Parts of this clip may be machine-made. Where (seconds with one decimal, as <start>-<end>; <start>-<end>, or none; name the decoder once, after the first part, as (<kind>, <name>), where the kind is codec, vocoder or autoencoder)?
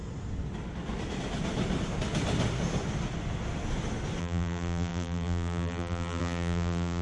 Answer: 4.2-7.0 (vocoder, BigVGAN v2)